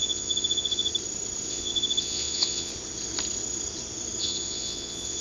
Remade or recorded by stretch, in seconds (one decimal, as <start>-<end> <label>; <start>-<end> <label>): 0.0-0.9 remade; 0.9-1.5 recorded; 1.5-2.7 remade; 2.7-4.2 recorded; 4.2-5.2 remade